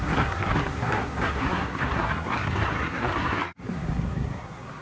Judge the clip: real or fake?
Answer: fake